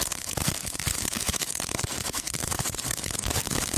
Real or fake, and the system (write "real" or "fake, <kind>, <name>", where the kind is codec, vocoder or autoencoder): fake, codec, SNAC